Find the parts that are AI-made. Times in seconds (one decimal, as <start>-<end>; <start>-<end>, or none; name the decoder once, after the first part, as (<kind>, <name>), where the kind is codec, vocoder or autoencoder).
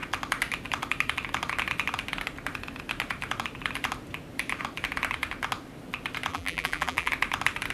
6.3-7.1 (vocoder, BigVGAN v2)